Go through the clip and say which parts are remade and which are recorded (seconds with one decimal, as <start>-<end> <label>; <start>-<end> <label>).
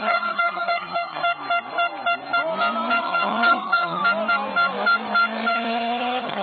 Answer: 0.0-1.2 remade; 1.2-3.0 recorded; 3.0-4.0 remade; 4.0-5.5 recorded; 5.5-6.4 remade